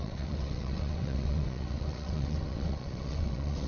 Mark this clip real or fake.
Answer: fake